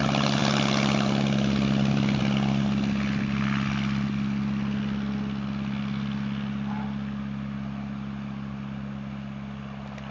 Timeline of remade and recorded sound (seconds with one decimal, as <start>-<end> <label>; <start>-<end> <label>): 0.0-10.1 recorded